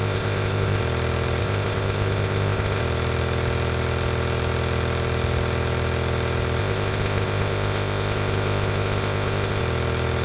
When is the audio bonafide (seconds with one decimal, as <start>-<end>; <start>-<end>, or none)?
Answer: 0.8-1.4; 2.8-6.6; 9.6-10.2